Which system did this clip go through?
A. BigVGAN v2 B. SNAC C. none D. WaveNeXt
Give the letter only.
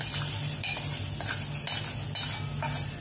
C